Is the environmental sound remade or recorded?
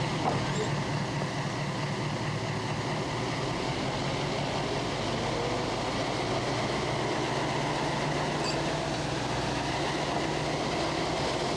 recorded